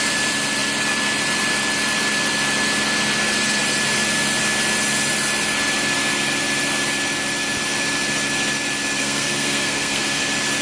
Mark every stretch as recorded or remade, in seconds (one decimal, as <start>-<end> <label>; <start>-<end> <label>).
0.0-9.0 recorded; 9.0-10.2 remade; 10.2-10.6 recorded